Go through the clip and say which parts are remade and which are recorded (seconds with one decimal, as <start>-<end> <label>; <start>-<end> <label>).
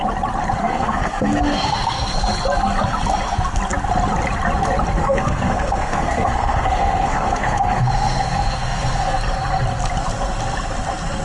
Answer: 0.0-0.6 recorded; 0.6-2.3 remade; 2.3-5.0 recorded; 5.0-9.2 remade; 9.2-11.2 recorded